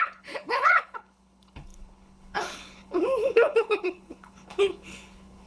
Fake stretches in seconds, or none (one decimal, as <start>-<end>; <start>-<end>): 0.0-5.5